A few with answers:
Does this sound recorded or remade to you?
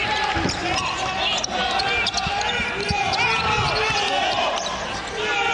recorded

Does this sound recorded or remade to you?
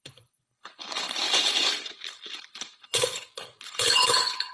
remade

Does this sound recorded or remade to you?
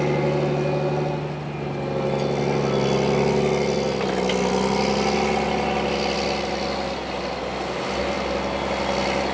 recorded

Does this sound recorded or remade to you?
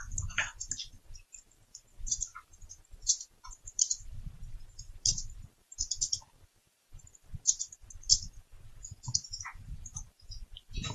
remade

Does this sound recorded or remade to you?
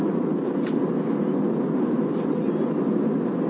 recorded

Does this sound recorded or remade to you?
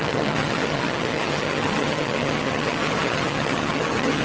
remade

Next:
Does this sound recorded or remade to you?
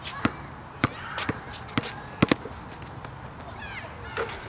recorded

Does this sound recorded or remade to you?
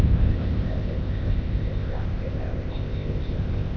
remade